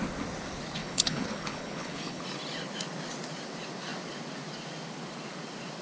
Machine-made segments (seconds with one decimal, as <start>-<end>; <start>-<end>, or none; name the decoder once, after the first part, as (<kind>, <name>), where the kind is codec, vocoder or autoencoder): 0.8-2.2 (codec, HILCodec)